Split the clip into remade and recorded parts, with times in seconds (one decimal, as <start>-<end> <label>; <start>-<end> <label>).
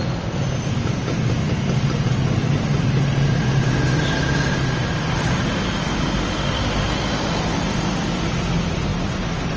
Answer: 0.0-2.1 recorded; 2.1-3.1 remade; 3.1-9.6 recorded